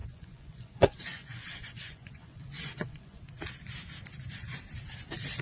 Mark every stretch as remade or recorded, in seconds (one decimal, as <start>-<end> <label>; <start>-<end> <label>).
0.0-3.2 remade; 3.2-5.4 recorded